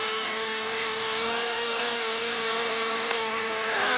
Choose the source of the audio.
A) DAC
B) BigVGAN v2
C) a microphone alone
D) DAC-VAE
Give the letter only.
A